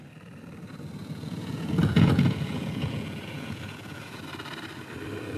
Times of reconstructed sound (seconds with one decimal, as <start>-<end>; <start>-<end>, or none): 1.0-4.2